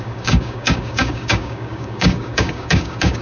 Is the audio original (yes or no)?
no